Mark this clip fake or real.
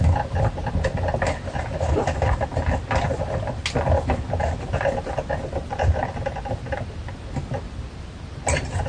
real